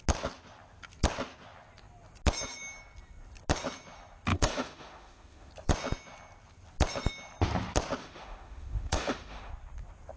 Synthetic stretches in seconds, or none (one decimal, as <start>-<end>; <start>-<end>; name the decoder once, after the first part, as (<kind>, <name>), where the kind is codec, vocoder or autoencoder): 4.3-5.5 (autoencoder, DAC-VAE); 8.0-9.5